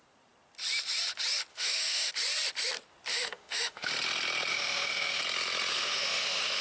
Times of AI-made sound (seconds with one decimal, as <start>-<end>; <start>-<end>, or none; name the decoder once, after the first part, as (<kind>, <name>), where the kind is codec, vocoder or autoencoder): 1.5-2.1 (autoencoder, DAC-VAE); 3.1-3.9; 4.5-5.2; 5.7-6.6